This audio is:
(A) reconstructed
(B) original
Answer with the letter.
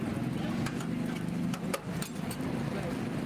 B